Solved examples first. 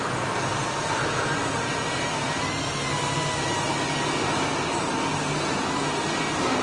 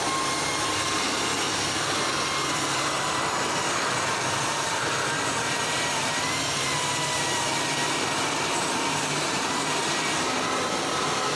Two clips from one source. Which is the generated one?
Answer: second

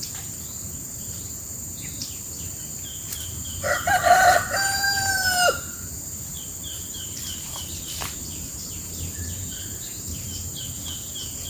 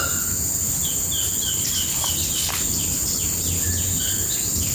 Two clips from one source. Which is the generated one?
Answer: first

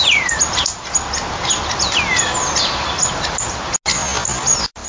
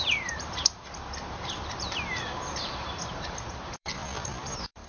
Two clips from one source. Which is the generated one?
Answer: second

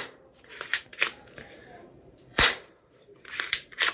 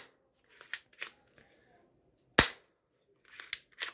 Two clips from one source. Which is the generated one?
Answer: first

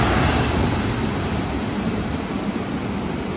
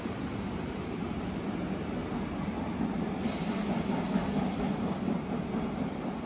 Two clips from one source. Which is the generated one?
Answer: second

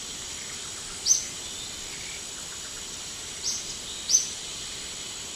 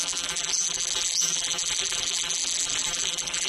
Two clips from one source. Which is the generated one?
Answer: second